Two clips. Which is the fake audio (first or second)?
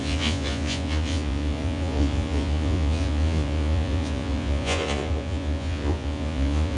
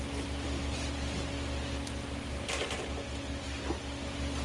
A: first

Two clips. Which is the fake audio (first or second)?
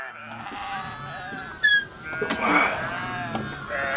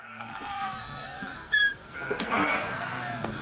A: second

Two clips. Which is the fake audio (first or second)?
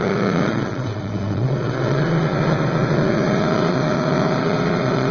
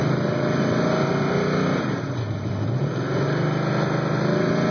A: first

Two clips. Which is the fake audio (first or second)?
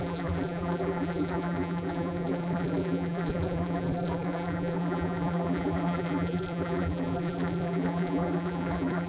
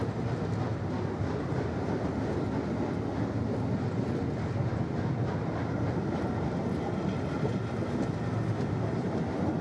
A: first